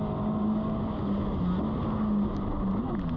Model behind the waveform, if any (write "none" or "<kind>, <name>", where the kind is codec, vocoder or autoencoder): none